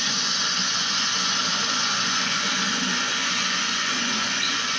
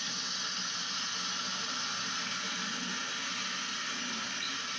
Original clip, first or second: second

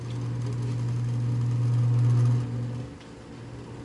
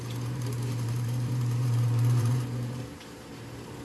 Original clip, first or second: first